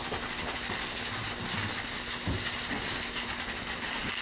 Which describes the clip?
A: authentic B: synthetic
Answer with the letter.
A